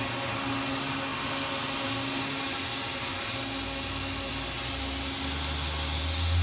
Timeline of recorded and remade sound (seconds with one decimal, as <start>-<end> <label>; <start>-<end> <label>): 0.0-6.4 recorded